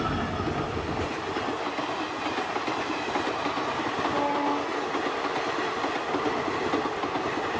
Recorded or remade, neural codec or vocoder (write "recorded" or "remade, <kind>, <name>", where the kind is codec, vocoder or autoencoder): recorded